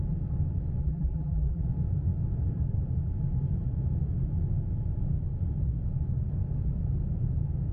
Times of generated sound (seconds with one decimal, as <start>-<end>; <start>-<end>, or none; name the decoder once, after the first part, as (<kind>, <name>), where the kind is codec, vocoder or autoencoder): 0.8-1.6 (vocoder, BigVGAN v2)